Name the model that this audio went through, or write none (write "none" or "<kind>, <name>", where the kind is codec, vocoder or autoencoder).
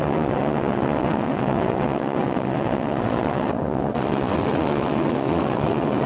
vocoder, WaveNeXt